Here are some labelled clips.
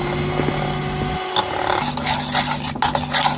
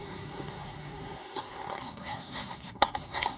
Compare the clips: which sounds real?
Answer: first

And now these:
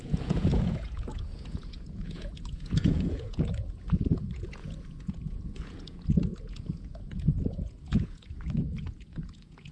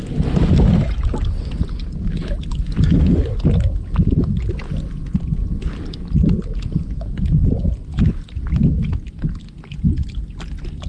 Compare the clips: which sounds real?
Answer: second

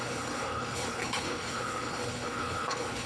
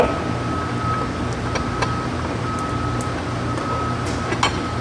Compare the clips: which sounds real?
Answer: second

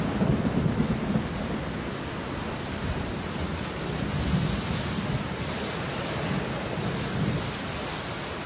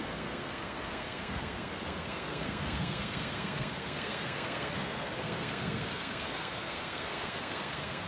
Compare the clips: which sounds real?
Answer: first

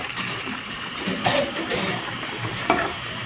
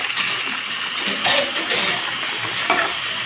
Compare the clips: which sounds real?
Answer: second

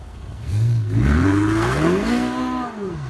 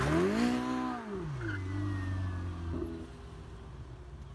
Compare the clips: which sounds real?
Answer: second